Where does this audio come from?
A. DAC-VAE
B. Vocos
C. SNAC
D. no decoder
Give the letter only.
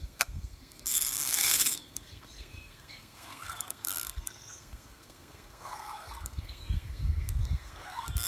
C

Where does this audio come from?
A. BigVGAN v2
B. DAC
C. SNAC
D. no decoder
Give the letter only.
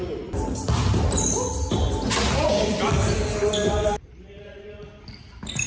D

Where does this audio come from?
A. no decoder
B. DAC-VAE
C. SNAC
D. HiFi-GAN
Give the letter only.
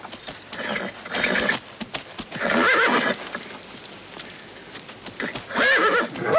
A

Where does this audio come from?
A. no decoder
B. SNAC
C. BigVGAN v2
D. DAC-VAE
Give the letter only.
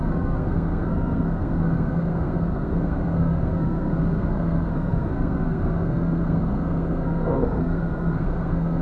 B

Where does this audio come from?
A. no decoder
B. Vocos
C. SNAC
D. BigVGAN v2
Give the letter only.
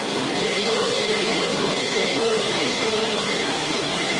C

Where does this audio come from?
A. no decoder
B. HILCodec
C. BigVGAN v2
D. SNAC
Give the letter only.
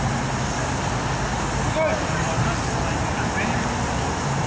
A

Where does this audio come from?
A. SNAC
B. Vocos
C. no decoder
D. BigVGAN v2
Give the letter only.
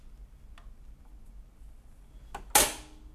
C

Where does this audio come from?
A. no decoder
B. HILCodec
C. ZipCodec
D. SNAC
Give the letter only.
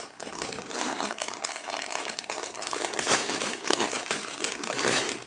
D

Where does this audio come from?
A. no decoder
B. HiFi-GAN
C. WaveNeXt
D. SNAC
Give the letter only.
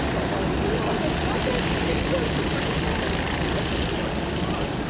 A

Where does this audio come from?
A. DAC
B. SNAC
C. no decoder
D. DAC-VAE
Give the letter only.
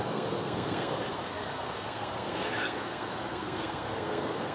B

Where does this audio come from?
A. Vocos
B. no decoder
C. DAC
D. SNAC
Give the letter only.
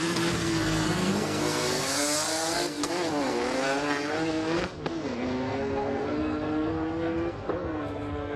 D